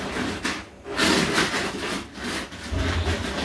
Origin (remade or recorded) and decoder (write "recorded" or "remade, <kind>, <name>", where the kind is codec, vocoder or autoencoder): recorded